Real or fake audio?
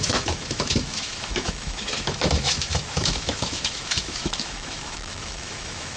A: fake